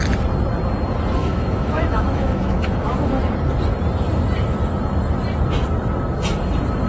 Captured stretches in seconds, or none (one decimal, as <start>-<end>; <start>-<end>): 0.0-1.2; 3.2-6.9